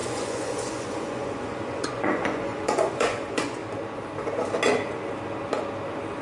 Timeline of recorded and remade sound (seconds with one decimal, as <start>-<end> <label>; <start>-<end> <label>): 0.0-3.6 remade; 3.6-6.2 recorded